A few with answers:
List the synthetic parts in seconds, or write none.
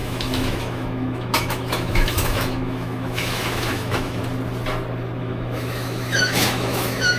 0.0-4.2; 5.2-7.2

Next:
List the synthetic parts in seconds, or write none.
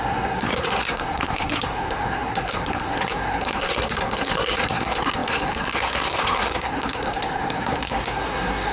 0.0-8.7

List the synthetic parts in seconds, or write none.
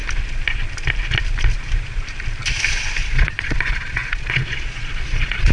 3.0-5.5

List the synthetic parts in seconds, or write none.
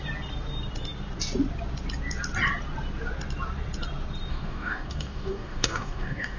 4.3-6.4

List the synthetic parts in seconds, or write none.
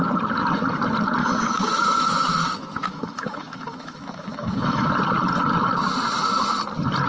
1.2-4.9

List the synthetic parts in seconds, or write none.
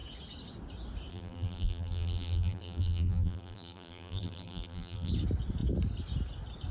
1.1-5.1